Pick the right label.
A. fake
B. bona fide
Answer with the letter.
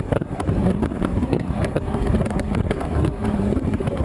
A